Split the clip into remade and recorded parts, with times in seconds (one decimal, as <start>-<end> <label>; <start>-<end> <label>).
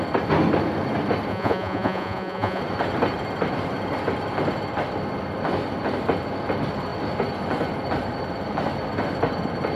0.0-1.3 recorded; 1.3-2.6 remade; 2.6-9.8 recorded